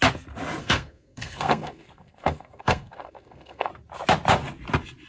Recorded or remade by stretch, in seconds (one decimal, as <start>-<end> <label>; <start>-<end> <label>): 0.0-0.6 recorded; 0.6-3.7 remade; 3.7-5.1 recorded